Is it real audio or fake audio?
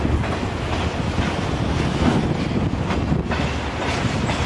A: real